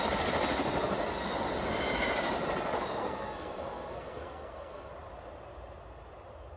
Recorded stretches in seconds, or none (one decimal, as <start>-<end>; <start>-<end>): 0.0-3.0; 4.9-6.6